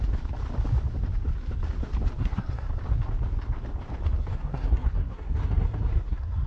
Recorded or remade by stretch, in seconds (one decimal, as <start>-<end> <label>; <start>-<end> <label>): 0.0-2.2 recorded; 2.2-2.7 remade; 2.7-4.3 recorded; 4.3-6.5 remade